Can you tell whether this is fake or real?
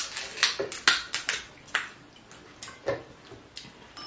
real